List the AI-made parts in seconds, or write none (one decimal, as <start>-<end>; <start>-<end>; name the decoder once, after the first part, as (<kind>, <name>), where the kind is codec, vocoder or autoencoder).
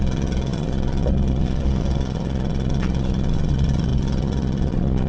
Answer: 0.0-5.1 (vocoder, Vocos)